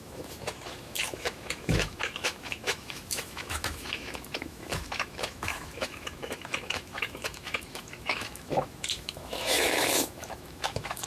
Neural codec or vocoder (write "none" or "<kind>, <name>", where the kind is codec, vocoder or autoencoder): autoencoder, DAC-VAE